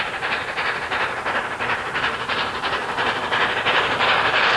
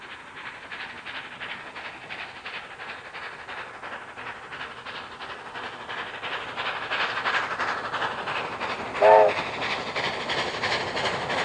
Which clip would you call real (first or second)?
second